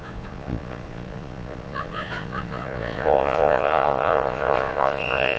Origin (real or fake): fake